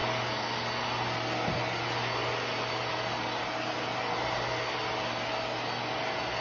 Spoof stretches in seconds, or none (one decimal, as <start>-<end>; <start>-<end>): none